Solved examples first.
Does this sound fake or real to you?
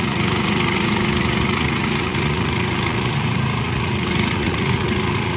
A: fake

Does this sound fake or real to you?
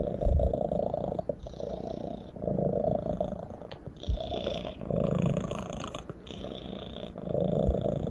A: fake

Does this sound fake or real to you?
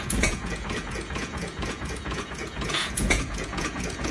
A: fake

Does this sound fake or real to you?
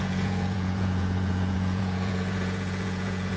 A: fake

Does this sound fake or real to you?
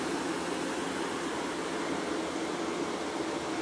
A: real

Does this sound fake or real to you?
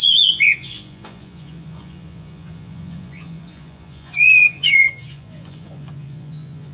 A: fake